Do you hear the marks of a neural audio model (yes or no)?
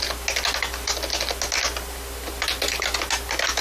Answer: no